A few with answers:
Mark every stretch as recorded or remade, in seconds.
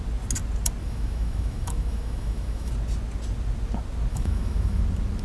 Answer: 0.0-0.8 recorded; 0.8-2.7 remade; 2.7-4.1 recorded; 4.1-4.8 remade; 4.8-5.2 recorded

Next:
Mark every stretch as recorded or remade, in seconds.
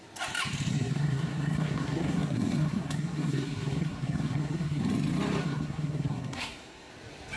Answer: 0.0-0.7 recorded; 0.7-4.8 remade; 4.8-5.4 recorded; 5.4-6.9 remade; 6.9-7.4 recorded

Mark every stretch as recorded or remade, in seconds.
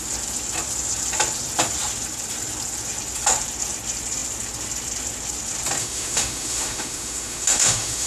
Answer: 0.0-5.8 recorded; 5.8-8.1 remade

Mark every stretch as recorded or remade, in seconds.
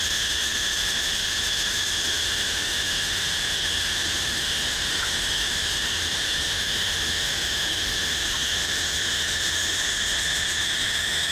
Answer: 0.0-11.3 remade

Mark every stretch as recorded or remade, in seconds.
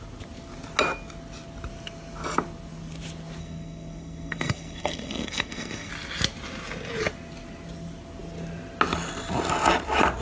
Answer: 0.0-3.4 recorded; 3.4-5.9 remade; 5.9-10.2 recorded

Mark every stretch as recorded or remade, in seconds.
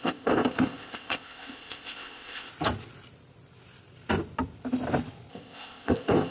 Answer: 0.0-2.5 remade; 2.5-5.3 recorded; 5.3-6.3 remade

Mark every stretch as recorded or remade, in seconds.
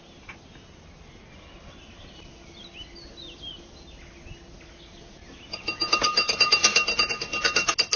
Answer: 0.0-8.0 recorded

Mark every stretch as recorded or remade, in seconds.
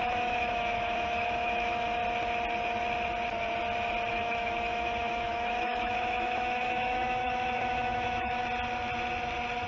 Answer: 0.0-2.0 remade; 2.0-4.1 recorded; 4.1-8.4 remade; 8.4-9.7 recorded